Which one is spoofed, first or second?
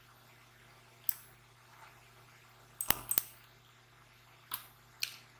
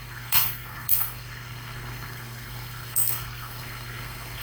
second